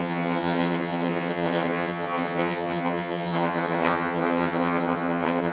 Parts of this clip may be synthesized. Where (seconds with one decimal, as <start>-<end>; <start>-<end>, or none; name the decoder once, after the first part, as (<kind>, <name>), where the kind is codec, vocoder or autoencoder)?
0.0-5.5 (vocoder, HiFi-GAN)